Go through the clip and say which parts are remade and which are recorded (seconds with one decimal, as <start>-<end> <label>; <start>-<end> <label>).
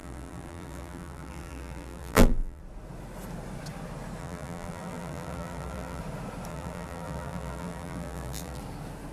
0.0-2.6 remade; 2.6-4.2 recorded; 4.2-6.0 remade; 6.0-6.5 recorded; 6.5-8.6 remade; 8.6-9.1 recorded